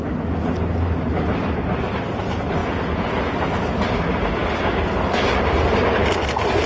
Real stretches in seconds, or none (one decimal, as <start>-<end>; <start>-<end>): 0.0-2.6; 3.3-6.7